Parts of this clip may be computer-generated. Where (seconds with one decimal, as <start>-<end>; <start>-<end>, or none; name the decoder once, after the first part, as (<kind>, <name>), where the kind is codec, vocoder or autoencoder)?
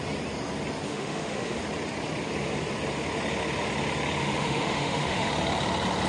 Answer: 0.9-1.6 (autoencoder, DAC-VAE); 4.2-5.3